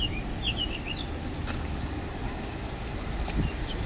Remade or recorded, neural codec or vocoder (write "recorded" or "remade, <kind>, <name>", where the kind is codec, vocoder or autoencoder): recorded